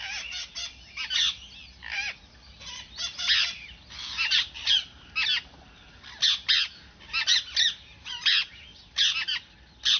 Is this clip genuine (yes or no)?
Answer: yes